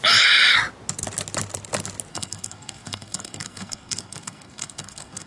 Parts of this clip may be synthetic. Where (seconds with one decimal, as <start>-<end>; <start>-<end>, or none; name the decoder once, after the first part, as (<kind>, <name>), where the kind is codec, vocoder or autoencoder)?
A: 2.1-5.3 (codec, SNAC)